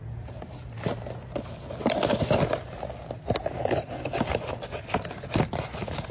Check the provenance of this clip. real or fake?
real